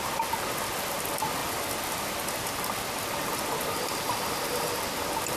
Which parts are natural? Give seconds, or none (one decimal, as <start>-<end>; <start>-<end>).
0.0-5.4